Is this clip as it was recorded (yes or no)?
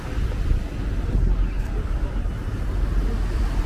yes